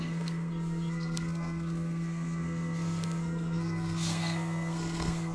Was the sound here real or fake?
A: fake